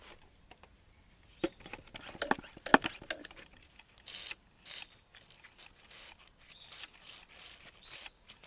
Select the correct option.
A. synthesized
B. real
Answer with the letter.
B